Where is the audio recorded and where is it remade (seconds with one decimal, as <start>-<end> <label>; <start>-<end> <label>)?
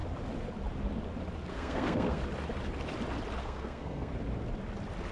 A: 0.0-1.5 recorded; 1.5-2.2 remade; 2.2-3.4 recorded; 3.4-4.1 remade; 4.1-5.1 recorded